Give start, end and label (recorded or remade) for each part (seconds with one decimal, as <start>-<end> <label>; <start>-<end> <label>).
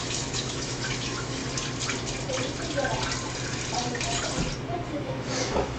0.0-1.4 remade; 1.4-4.9 recorded; 4.9-5.8 remade